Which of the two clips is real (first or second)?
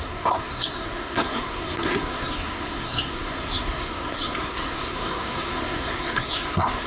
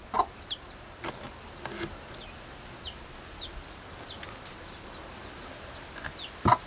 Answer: second